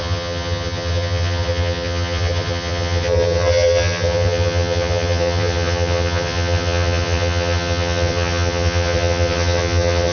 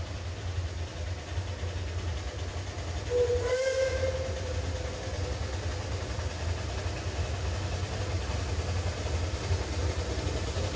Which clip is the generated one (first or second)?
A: first